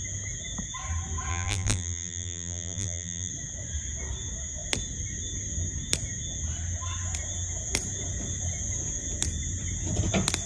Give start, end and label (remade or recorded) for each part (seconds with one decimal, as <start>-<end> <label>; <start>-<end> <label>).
0.0-1.3 recorded; 1.3-3.3 remade; 3.3-10.5 recorded